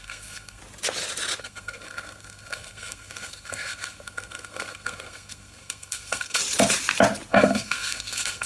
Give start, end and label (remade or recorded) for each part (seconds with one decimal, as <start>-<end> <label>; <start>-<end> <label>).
0.0-0.6 remade; 0.6-1.4 recorded; 1.4-6.4 remade; 6.4-7.3 recorded; 7.3-8.5 remade